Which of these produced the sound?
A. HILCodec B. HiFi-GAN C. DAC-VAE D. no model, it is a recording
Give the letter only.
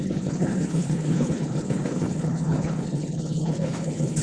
A